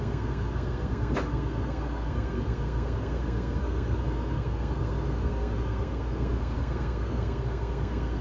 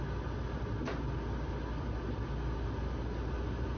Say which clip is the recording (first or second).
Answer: second